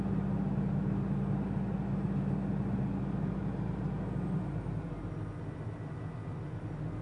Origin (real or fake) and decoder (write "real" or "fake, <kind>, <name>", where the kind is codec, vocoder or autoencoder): real